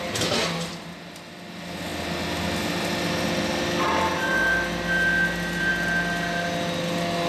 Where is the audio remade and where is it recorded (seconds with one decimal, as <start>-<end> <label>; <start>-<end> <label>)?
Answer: 0.0-7.3 recorded